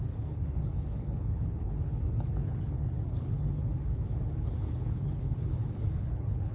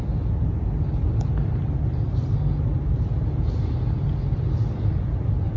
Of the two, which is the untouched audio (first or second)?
second